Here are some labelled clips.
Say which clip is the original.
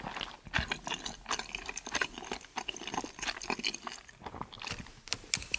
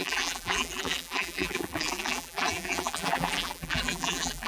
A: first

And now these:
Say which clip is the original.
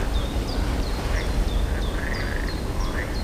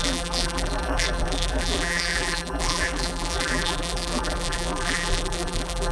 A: first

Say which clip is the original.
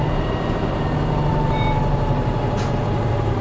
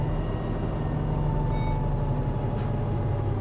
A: second